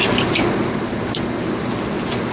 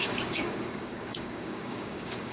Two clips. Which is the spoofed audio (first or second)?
second